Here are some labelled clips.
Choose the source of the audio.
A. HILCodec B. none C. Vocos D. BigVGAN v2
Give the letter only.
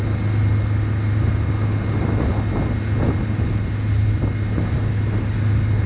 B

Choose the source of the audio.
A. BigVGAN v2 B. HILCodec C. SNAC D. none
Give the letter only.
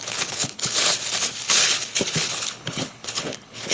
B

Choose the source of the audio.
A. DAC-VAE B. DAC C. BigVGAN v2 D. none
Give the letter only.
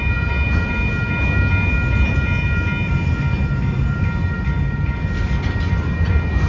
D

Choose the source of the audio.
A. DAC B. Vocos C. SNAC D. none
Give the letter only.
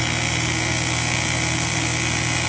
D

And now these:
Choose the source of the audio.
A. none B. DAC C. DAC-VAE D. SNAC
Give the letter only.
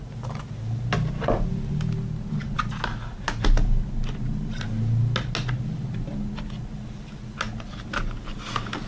A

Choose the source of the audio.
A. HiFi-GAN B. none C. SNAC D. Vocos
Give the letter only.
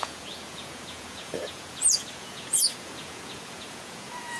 D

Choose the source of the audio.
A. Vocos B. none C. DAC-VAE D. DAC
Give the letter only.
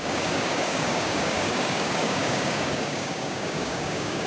D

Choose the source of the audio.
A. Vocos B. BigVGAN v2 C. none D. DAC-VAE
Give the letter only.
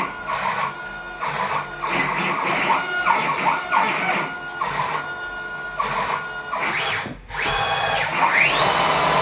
C